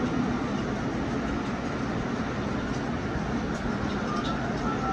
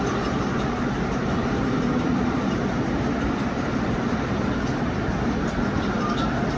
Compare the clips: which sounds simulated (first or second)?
second